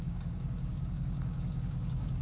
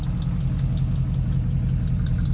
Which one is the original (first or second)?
second